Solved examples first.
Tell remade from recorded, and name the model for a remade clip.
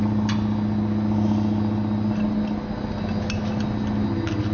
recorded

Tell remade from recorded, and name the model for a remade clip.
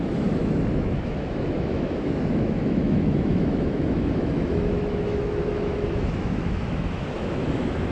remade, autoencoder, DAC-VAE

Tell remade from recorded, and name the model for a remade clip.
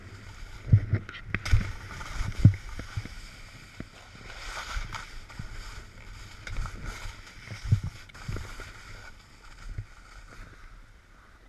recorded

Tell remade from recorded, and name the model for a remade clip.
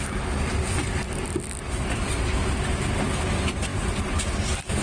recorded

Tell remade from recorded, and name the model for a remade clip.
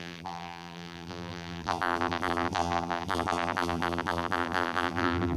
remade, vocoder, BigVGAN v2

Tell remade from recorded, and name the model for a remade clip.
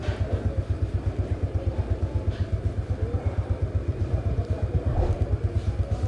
recorded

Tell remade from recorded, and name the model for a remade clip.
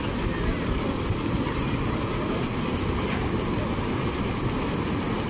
recorded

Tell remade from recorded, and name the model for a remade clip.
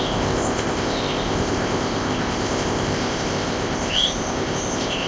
remade, codec, ZipCodec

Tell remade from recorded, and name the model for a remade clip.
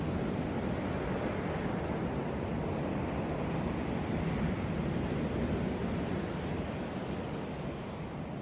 recorded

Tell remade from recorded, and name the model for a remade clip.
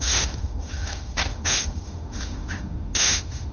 remade, autoencoder, DAC-VAE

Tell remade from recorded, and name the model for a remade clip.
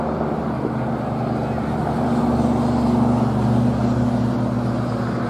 recorded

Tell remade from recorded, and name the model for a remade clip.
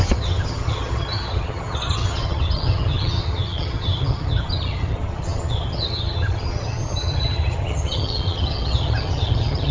remade, vocoder, HiFi-GAN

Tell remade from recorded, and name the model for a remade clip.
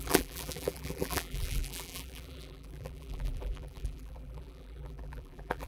remade, vocoder, BigVGAN v2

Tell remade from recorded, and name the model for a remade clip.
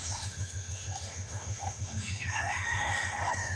remade, autoencoder, DAC-VAE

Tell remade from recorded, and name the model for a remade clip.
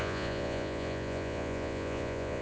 remade, vocoder, Vocos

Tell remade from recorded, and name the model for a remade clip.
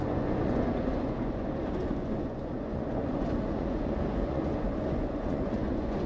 remade, vocoder, Vocos